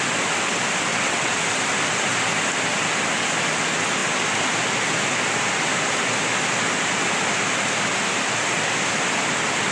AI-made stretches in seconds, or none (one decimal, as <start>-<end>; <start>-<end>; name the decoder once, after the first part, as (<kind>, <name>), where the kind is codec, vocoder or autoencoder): 0.9-1.4 (vocoder, WaveNeXt)